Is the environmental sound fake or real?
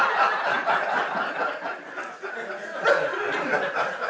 real